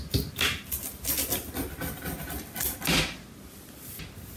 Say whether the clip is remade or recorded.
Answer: recorded